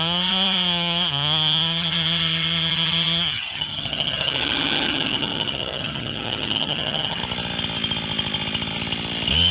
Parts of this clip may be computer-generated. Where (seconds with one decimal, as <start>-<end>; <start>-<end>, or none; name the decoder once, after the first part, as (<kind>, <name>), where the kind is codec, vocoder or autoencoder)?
0.0-7.2 (vocoder, HiFi-GAN)